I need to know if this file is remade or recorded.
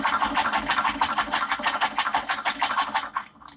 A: recorded